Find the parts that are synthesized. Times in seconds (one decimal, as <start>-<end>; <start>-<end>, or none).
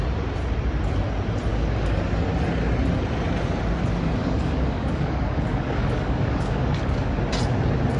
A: 1.5-2.0; 4.2-7.2